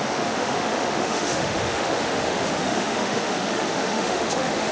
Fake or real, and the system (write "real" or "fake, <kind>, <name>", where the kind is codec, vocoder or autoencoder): fake, autoencoder, DAC-VAE